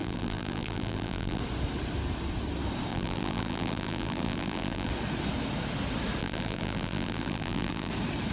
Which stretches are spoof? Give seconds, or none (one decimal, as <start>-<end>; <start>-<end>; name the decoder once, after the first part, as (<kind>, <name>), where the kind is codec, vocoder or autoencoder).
0.0-1.4 (vocoder, BigVGAN v2); 2.9-4.9; 6.2-7.9